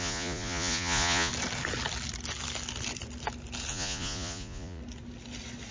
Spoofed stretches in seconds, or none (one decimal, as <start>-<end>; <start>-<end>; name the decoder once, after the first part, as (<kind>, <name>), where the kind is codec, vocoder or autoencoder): 0.0-1.3 (vocoder, Vocos); 3.7-4.8